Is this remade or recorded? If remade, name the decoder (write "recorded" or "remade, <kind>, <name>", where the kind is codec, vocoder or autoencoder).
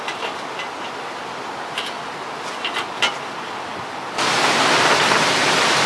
recorded